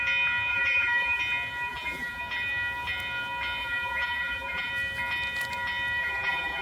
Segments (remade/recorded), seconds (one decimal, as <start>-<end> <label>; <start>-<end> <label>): 0.0-0.5 recorded; 0.5-1.2 remade; 1.2-1.7 recorded; 1.7-2.2 remade; 2.2-3.6 recorded; 3.6-4.7 remade; 4.7-6.0 recorded; 6.0-6.6 remade